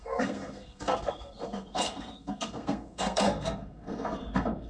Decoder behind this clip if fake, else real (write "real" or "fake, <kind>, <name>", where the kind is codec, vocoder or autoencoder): fake, codec, SNAC